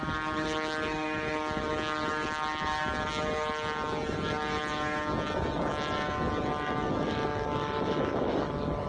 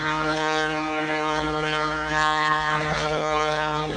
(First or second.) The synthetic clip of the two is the second